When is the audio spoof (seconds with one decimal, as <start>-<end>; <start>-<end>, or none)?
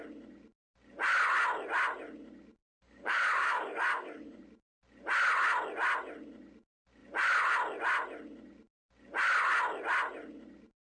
2.6-4.4